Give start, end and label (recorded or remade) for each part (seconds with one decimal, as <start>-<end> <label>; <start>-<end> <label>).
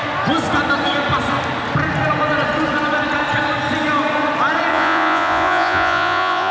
0.0-4.7 recorded; 4.7-6.5 remade